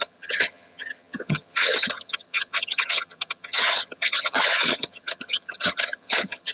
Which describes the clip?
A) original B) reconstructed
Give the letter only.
B